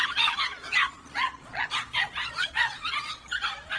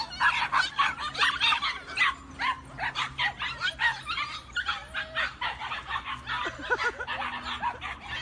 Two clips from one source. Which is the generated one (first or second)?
first